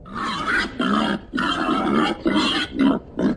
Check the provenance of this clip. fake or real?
real